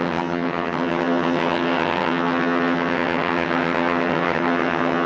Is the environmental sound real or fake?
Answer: fake